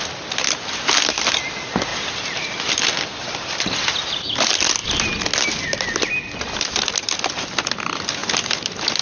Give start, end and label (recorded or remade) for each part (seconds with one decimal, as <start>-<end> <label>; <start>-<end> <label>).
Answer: 0.0-9.0 recorded